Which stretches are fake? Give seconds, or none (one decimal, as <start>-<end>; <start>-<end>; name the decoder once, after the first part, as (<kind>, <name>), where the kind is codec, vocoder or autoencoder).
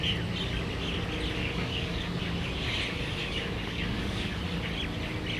1.4-2.2 (codec, DAC); 3.2-4.4